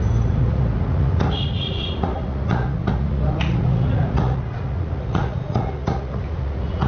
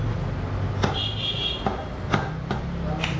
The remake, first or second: first